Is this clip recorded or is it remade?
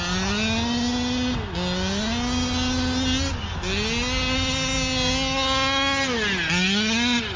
recorded